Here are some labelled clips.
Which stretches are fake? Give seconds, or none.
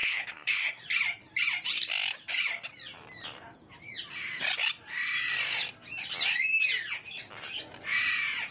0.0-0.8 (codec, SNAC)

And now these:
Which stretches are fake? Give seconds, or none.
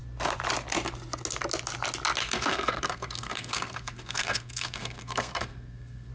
2.2-6.1 (codec, SNAC)